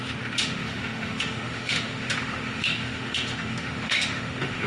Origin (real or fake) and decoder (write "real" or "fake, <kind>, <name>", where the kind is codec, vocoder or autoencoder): fake, autoencoder, DAC-VAE